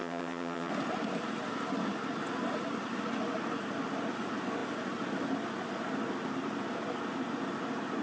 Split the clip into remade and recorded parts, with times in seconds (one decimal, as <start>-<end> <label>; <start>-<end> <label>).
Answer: 0.0-0.7 remade; 0.7-8.0 recorded